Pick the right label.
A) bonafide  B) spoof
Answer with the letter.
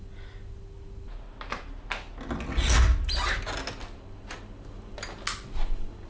A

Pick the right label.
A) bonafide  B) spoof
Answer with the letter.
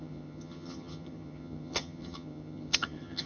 B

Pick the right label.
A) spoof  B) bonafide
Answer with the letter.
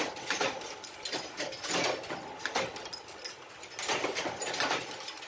B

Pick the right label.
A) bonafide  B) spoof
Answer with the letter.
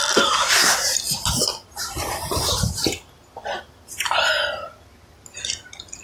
A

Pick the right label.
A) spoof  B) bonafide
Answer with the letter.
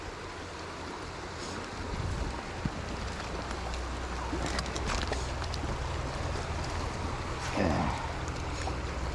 B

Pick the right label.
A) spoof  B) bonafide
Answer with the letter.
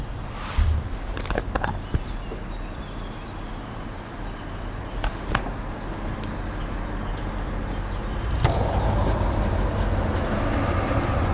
B